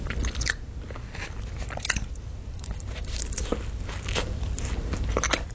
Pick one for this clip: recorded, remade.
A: recorded